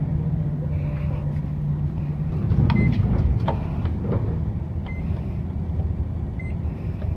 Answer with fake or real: real